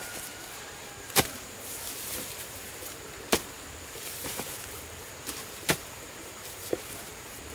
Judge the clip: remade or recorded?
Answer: remade